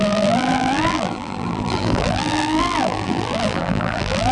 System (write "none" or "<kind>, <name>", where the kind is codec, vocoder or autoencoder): vocoder, BigVGAN v2